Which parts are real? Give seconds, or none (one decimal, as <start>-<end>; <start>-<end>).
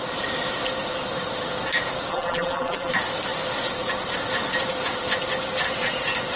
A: 0.0-2.1; 2.9-6.4